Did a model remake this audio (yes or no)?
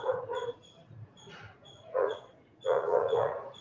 yes